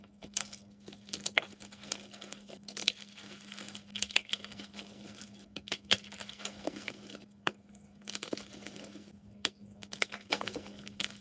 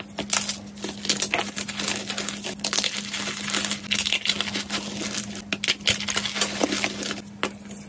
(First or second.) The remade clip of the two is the first